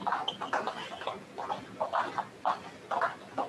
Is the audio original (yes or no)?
yes